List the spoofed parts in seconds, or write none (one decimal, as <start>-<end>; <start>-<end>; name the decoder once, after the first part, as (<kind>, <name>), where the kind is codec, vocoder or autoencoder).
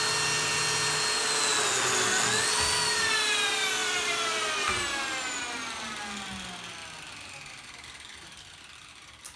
3.8-4.7 (vocoder, BigVGAN v2); 6.8-8.9